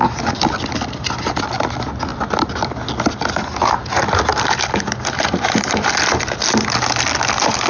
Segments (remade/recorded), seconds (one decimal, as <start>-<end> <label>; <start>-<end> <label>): 0.0-4.3 recorded; 4.3-6.4 remade; 6.4-7.7 recorded